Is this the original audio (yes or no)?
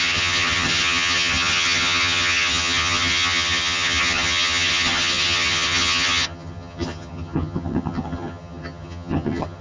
no